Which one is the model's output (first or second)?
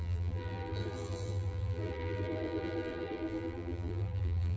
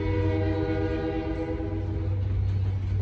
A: first